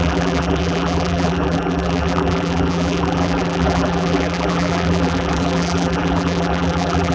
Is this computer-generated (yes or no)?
yes